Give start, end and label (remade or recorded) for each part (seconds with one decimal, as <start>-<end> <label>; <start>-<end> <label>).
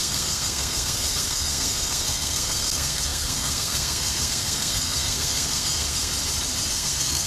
0.0-6.1 remade; 6.1-6.7 recorded; 6.7-7.3 remade